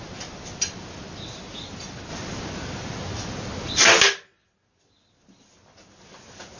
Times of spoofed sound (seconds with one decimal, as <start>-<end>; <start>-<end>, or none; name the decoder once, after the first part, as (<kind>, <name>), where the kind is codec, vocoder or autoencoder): none